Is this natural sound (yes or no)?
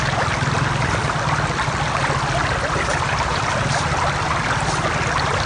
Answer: yes